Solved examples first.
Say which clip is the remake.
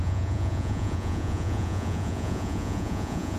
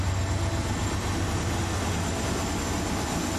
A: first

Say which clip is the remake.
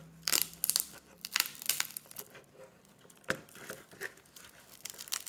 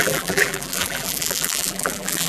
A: second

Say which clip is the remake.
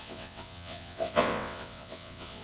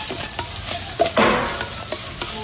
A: first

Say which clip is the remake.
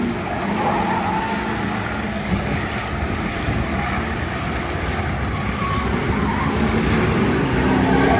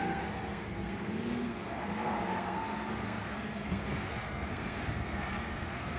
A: second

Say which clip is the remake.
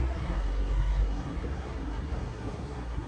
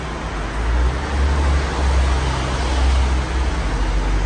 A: first